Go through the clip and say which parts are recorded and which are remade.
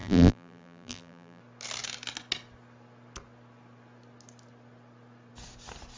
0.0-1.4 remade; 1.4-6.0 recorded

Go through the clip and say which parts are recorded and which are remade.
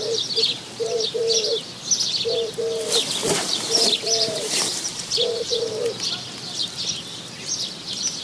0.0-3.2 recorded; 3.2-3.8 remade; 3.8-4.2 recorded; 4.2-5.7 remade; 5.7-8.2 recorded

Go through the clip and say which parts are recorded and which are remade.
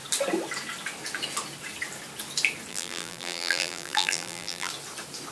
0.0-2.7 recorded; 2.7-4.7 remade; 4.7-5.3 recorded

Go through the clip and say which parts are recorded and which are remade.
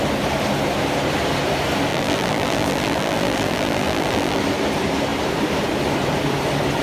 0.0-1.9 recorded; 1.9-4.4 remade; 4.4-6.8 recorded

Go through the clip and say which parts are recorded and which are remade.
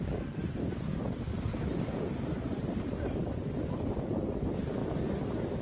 0.0-5.6 recorded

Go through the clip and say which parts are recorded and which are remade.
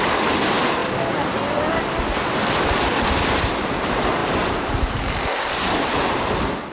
0.0-6.7 recorded